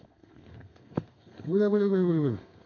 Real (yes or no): no